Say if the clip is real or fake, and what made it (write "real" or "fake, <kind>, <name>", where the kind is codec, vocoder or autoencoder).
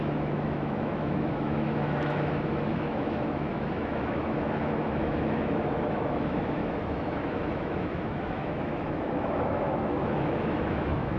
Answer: fake, autoencoder, DAC-VAE